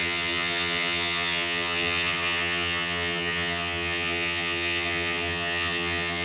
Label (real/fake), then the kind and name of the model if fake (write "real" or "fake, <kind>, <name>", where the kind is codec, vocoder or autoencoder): fake, vocoder, HiFi-GAN